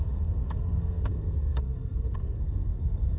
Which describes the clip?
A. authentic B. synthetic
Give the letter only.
B